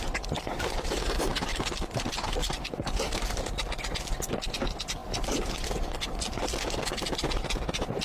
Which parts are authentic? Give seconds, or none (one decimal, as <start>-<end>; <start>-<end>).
0.0-1.3; 2.5-5.0; 5.8-8.0